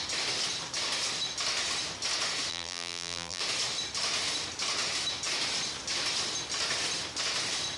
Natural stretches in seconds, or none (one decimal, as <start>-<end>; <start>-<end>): 0.0-2.5; 3.4-7.8